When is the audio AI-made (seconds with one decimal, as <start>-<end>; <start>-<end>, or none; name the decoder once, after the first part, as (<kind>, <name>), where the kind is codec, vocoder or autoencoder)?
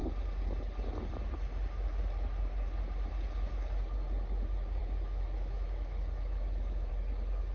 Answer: 4.8-6.9 (autoencoder, DAC-VAE)